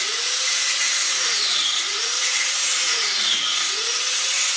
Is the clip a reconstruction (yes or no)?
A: yes